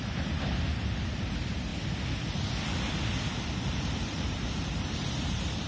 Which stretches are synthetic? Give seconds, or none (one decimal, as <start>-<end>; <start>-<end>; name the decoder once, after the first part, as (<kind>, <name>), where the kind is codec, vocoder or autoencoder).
0.0-1.7 (vocoder, BigVGAN v2); 3.8-5.7